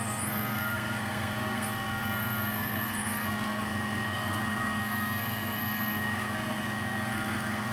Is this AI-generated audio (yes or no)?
yes